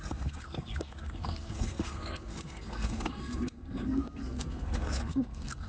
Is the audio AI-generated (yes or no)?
yes